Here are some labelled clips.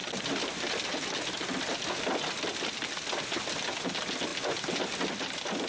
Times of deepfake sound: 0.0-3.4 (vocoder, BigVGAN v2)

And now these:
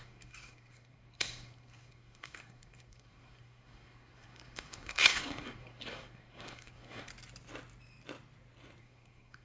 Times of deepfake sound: 0.0-7.1 (codec, SNAC); 8.8-9.4

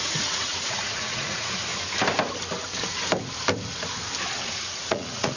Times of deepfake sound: 0.0-1.7 (vocoder, Vocos); 4.5-5.4

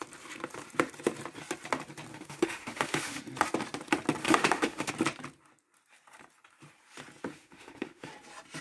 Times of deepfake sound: 2.1-3.2 (autoencoder, DAC-VAE); 4.2-4.9; 7.3-8.1